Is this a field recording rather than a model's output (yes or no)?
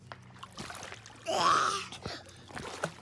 yes